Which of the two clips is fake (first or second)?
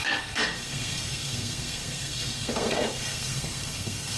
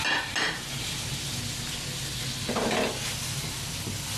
first